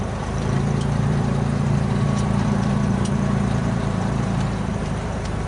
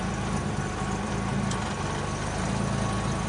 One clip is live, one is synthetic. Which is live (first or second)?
second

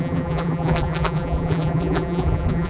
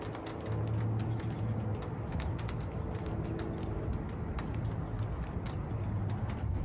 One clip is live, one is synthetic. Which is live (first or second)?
second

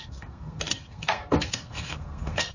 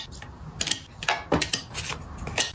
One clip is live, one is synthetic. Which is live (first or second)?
second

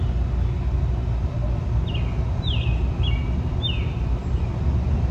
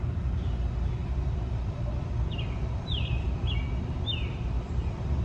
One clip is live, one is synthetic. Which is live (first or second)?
first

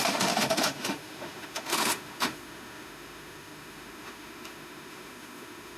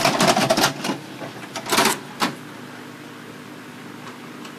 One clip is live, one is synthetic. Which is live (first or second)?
second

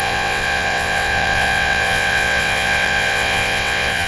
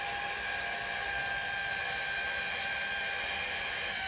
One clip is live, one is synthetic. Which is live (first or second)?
second